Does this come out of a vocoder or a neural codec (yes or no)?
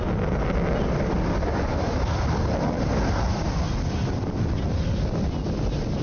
no